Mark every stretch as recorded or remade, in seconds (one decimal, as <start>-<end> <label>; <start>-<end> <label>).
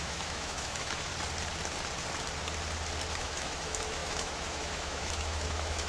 0.0-1.1 remade; 1.1-3.2 recorded; 3.2-5.9 remade